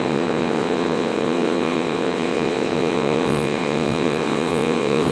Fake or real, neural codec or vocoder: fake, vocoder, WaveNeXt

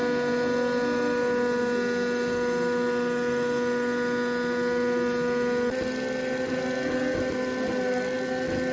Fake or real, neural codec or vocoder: real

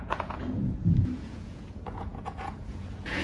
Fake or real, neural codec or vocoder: fake, vocoder, Vocos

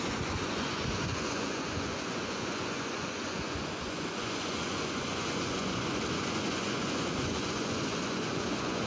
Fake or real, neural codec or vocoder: fake, vocoder, Vocos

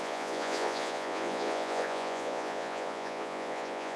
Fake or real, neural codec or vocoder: fake, vocoder, Vocos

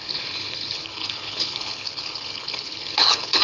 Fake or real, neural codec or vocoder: fake, codec, HILCodec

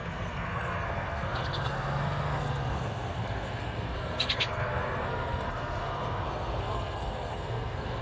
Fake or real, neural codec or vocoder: fake, codec, SNAC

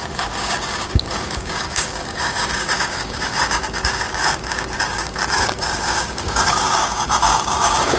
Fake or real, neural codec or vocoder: fake, codec, DAC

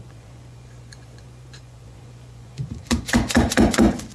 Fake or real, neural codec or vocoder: fake, vocoder, Vocos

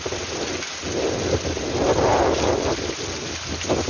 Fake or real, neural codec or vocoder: real